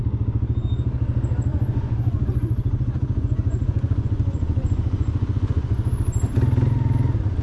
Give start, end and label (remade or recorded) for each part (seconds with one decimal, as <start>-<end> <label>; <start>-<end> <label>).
0.0-1.5 recorded; 1.5-5.9 remade; 5.9-7.4 recorded